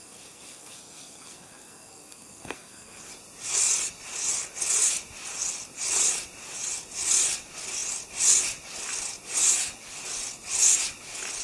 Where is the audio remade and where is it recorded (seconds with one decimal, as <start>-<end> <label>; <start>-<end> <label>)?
0.0-3.1 remade; 3.1-11.4 recorded